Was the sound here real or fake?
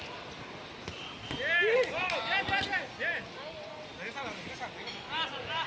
real